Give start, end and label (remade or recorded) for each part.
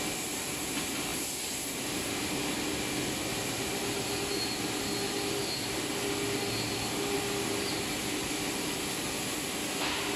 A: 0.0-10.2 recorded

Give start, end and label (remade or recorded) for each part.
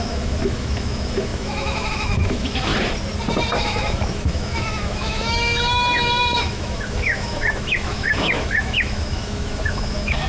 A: 0.0-2.7 remade; 2.7-3.6 recorded; 3.6-10.3 remade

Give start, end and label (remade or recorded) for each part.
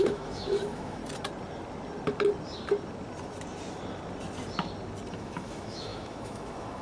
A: 0.0-1.0 remade; 1.0-5.1 recorded; 5.1-6.8 remade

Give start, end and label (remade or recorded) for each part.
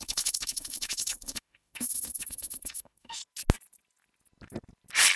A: 0.0-3.2 remade; 3.2-5.2 recorded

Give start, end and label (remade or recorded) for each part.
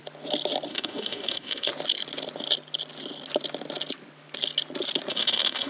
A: 0.0-0.7 recorded; 0.7-1.7 remade; 1.7-5.1 recorded; 5.1-5.7 remade